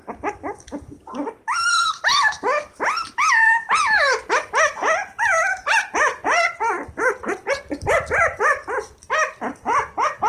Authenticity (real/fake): fake